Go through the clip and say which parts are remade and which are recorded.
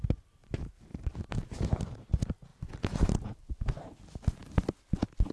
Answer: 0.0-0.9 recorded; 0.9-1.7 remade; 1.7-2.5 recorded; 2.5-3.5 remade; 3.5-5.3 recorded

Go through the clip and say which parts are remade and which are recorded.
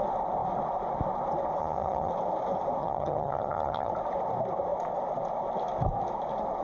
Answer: 0.0-1.6 recorded; 1.6-2.1 remade; 2.1-2.8 recorded; 2.8-3.9 remade; 3.9-6.6 recorded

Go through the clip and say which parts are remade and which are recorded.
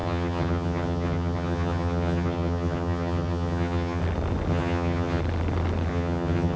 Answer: 0.0-4.0 remade; 4.0-4.5 recorded; 4.5-5.2 remade; 5.2-5.9 recorded; 5.9-6.6 remade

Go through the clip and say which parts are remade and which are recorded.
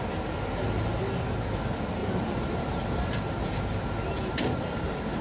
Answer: 0.0-2.0 recorded; 2.0-5.2 remade